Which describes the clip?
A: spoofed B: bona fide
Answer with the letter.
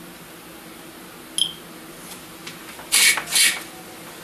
B